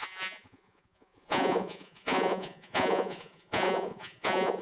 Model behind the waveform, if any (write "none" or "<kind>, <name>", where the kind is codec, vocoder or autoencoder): vocoder, Vocos